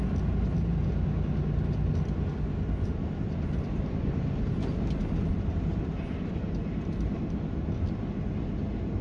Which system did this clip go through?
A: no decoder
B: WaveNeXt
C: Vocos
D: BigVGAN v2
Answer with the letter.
A